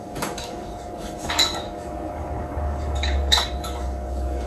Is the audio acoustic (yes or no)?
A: no